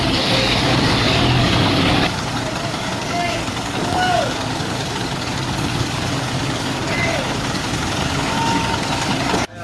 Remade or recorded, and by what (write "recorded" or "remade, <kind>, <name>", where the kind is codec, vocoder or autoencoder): remade, codec, DAC